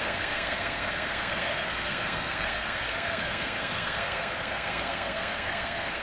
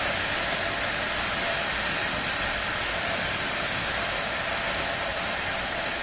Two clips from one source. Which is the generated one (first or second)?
first